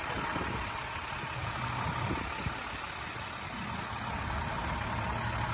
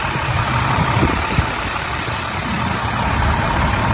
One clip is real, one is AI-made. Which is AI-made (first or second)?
second